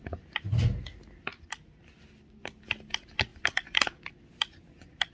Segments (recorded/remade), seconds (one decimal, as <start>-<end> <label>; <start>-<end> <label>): 0.0-3.3 recorded; 3.3-4.1 remade; 4.1-5.1 recorded